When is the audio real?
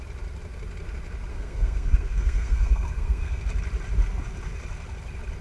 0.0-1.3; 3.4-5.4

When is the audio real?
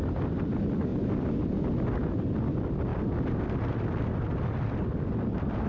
0.0-0.9; 1.4-5.7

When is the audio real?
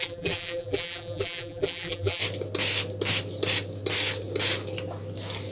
2.2-5.5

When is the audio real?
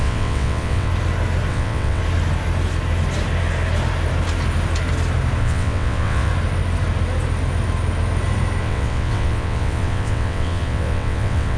0.9-1.5; 2.0-5.4; 6.3-8.6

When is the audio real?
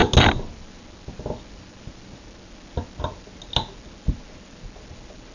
0.0-5.3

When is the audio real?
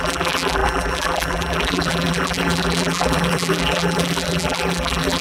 none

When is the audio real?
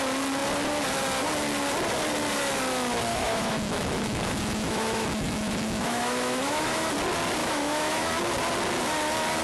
0.0-3.1; 6.9-7.4; 8.1-9.4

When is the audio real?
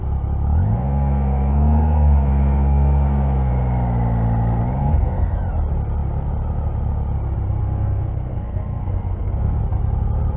0.0-0.7; 3.5-4.8; 5.4-7.6; 9.6-10.4